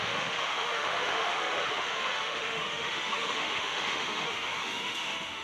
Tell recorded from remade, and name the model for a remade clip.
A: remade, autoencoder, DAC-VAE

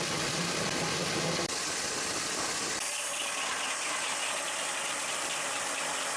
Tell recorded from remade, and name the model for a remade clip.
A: remade, vocoder, BigVGAN v2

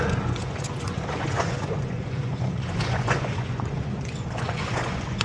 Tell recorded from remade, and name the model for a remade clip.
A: remade, vocoder, Vocos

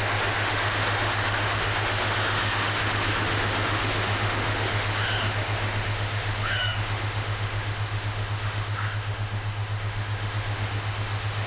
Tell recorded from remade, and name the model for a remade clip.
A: remade, autoencoder, DAC-VAE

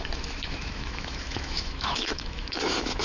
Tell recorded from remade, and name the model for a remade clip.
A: remade, autoencoder, DAC-VAE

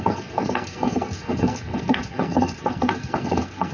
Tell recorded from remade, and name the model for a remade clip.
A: remade, codec, SNAC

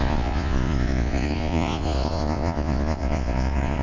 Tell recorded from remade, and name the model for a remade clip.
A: remade, vocoder, Vocos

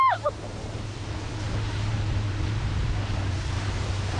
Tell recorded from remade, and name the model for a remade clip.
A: remade, vocoder, BigVGAN v2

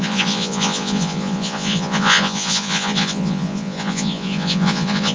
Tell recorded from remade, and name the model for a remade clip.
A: remade, vocoder, Vocos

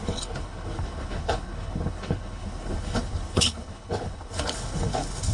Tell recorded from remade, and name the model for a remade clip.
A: remade, codec, HILCodec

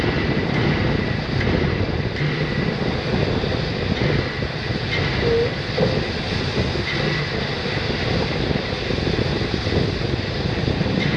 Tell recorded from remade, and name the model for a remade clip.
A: recorded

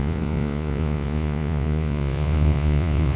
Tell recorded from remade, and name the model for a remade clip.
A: remade, vocoder, Vocos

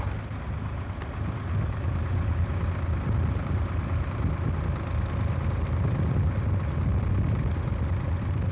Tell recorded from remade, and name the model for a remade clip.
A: recorded